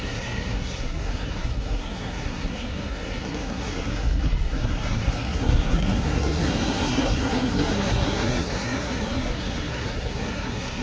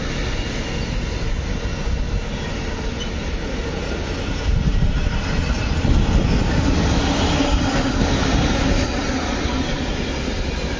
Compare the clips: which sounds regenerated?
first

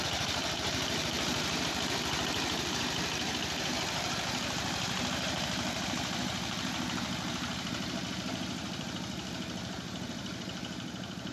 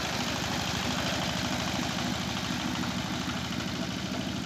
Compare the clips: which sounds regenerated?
first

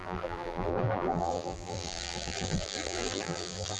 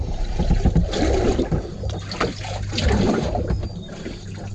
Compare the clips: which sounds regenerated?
first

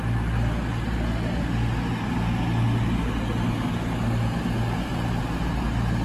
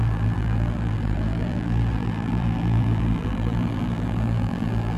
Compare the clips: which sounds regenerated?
second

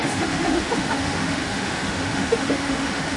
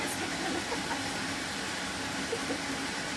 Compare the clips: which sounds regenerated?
first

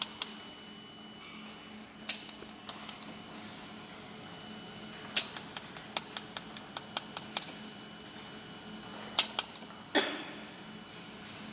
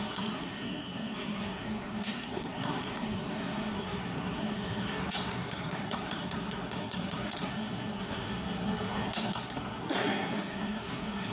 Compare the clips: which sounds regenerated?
second